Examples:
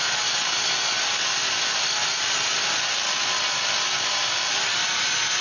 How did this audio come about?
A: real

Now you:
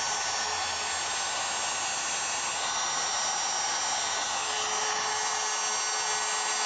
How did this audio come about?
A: real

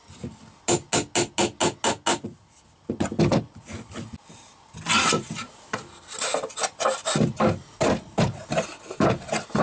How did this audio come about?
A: real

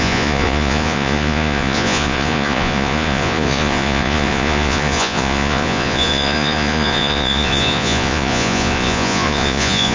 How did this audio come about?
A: fake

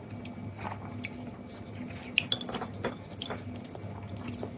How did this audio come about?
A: real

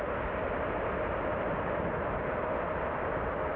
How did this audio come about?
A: real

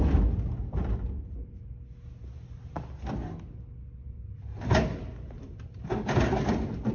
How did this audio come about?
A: real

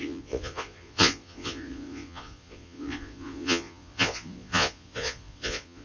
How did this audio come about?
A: fake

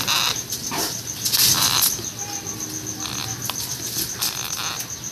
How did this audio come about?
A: real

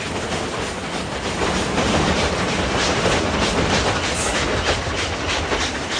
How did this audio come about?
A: real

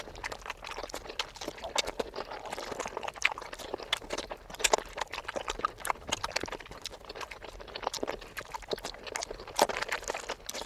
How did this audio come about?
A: real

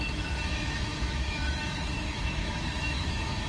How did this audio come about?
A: fake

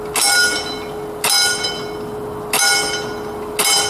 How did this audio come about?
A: real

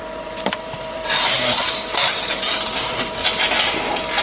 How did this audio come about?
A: fake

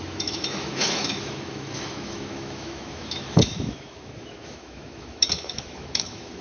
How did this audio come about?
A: fake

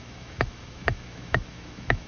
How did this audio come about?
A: fake